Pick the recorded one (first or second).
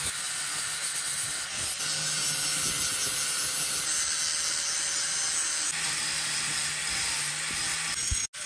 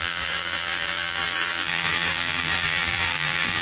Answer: first